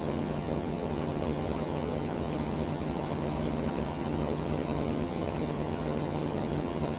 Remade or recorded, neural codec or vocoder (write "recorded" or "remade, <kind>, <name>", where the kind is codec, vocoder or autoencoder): remade, vocoder, HiFi-GAN